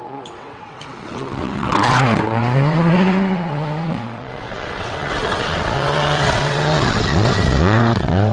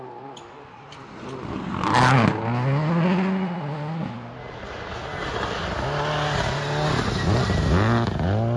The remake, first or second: first